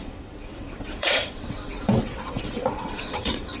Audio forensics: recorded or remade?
remade